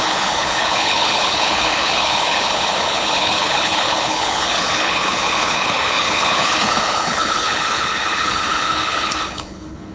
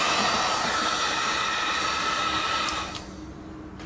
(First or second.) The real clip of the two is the second